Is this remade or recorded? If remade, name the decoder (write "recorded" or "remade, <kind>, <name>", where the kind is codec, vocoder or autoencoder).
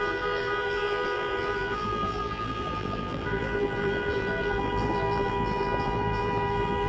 remade, vocoder, BigVGAN v2